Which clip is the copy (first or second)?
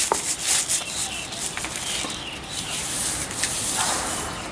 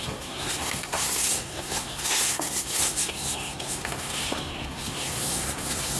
second